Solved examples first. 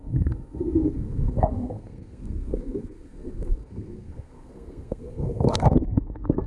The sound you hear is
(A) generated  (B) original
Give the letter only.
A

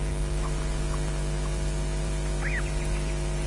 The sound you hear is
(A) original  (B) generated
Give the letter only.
A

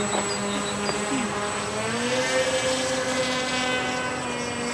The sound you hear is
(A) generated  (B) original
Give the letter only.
B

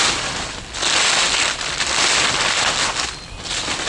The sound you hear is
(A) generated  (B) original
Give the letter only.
B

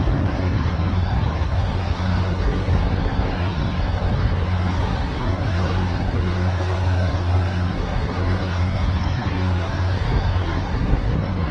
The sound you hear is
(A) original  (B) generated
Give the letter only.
B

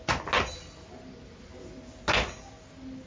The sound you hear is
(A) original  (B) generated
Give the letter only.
A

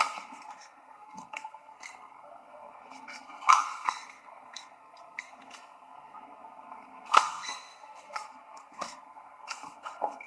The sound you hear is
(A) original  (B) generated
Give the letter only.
B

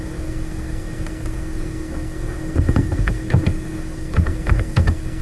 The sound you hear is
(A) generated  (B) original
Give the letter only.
A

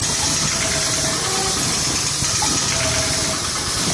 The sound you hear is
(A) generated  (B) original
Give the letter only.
B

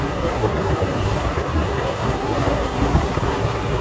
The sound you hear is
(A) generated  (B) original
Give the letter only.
A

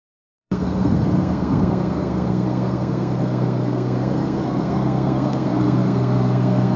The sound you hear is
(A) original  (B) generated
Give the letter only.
B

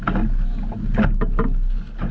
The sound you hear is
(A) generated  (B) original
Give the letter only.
B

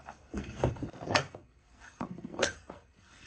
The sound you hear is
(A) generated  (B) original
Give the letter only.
A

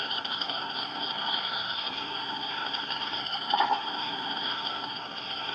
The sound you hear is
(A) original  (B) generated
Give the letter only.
B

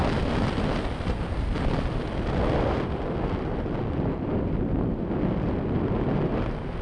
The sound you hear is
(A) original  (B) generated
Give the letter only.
A